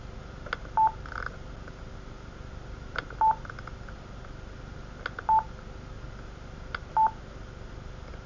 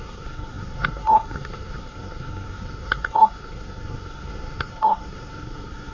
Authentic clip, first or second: first